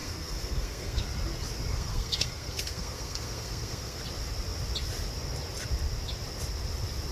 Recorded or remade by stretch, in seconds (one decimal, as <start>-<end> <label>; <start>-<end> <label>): 0.0-1.0 remade; 1.0-1.7 recorded; 1.7-4.0 remade; 4.0-7.1 recorded